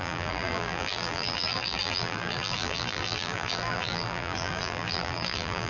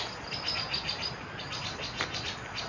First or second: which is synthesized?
first